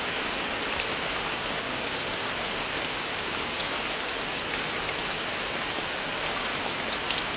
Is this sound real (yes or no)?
yes